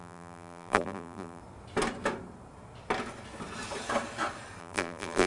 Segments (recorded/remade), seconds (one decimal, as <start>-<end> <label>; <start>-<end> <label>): 0.0-1.4 remade; 1.4-4.6 recorded; 4.6-5.3 remade